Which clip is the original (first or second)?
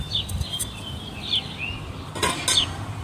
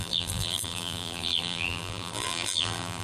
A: first